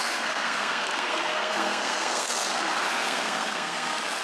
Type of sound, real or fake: fake